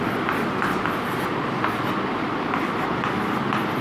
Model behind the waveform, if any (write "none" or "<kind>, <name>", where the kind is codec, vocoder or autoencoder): none